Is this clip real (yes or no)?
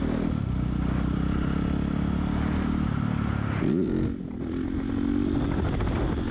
yes